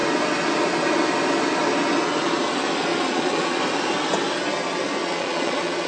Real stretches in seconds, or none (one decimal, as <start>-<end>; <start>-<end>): 0.0-2.9; 3.6-5.0